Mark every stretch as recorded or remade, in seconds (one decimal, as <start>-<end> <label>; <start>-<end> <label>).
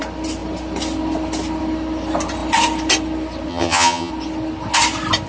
0.0-3.5 recorded; 3.5-4.1 remade; 4.1-5.3 recorded